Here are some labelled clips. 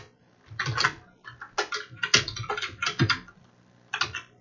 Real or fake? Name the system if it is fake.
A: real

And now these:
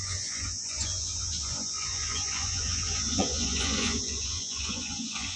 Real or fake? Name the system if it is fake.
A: fake, vocoder, Vocos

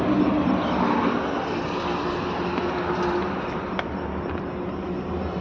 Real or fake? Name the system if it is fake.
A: real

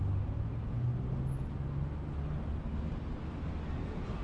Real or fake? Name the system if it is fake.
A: real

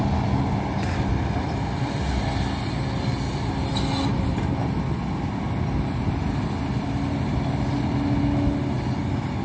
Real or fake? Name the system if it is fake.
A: real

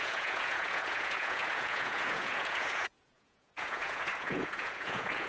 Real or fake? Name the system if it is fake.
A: fake, vocoder, Vocos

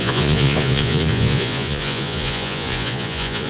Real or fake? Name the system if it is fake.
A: fake, vocoder, Vocos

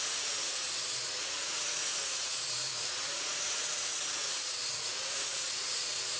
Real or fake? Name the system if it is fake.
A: fake, vocoder, Vocos